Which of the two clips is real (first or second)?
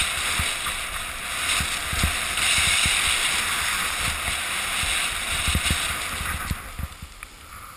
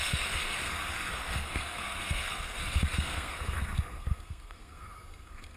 first